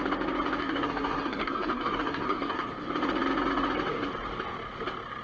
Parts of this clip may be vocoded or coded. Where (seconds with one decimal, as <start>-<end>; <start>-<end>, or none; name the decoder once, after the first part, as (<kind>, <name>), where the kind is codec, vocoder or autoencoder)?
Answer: 0.6-2.7 (codec, SNAC)